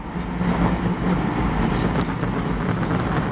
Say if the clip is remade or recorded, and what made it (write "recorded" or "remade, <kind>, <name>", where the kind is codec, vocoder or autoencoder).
recorded